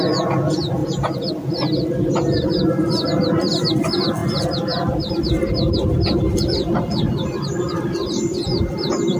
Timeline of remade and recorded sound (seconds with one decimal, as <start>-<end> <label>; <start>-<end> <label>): 0.0-9.2 recorded